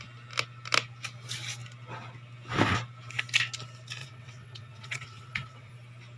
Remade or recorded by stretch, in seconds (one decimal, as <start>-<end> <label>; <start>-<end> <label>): 0.0-4.0 recorded; 4.0-5.7 remade; 5.7-6.2 recorded